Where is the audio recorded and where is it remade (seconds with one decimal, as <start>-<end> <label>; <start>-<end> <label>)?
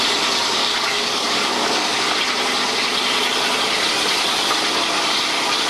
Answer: 0.0-0.6 recorded; 0.6-2.0 remade; 2.0-5.7 recorded